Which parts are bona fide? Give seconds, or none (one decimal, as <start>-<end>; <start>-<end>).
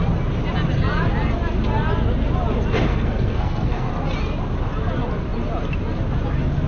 0.0-2.9; 3.9-6.7